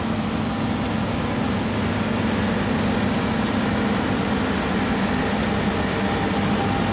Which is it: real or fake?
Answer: real